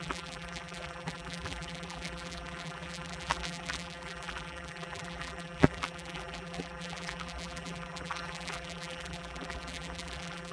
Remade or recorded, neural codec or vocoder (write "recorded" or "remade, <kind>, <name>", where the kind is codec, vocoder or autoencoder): remade, vocoder, BigVGAN v2